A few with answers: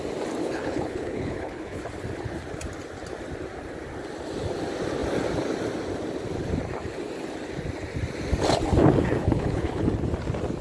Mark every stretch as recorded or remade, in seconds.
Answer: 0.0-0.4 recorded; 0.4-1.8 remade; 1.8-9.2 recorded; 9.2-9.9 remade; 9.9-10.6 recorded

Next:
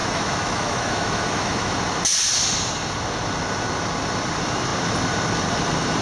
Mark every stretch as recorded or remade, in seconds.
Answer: 0.0-1.8 remade; 1.8-6.0 recorded

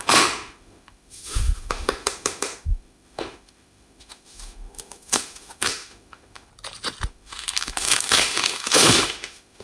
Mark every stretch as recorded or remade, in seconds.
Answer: 0.0-6.5 remade; 6.5-7.1 recorded; 7.1-9.6 remade

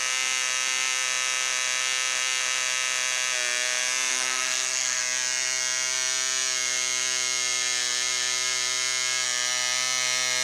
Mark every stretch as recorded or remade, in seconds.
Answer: 0.0-4.1 recorded; 4.1-5.0 remade; 5.0-10.4 recorded

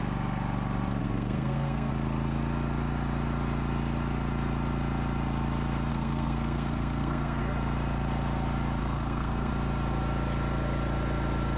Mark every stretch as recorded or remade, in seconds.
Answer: 0.0-1.0 recorded; 1.0-1.9 remade; 1.9-5.9 recorded; 5.9-7.4 remade; 7.4-8.8 recorded; 8.8-9.5 remade; 9.5-11.6 recorded

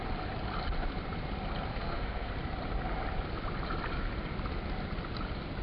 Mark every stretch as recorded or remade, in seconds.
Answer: 0.0-1.7 recorded; 1.7-2.3 remade; 2.3-5.6 recorded

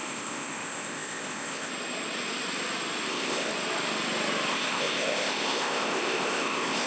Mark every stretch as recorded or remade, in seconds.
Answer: 0.0-1.7 remade; 1.7-3.1 recorded; 3.1-3.5 remade; 3.5-4.5 recorded; 4.5-6.9 remade